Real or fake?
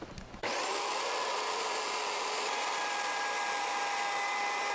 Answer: real